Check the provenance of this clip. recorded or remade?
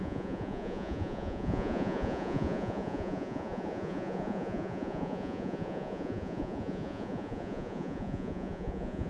remade